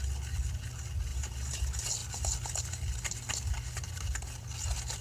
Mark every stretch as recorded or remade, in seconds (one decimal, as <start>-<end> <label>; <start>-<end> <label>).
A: 0.0-1.1 recorded; 1.1-1.6 remade; 1.6-5.0 recorded